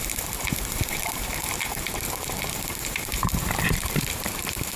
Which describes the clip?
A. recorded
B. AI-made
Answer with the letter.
B